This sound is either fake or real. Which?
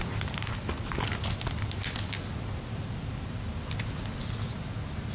real